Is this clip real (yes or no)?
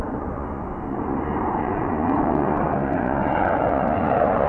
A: no